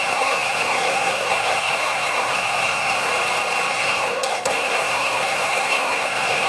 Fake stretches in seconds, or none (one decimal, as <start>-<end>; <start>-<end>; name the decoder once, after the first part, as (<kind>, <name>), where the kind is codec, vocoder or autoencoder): 0.0-3.1 (codec, SNAC); 3.7-6.5